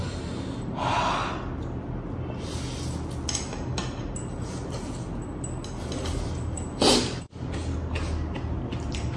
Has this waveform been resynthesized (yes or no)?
no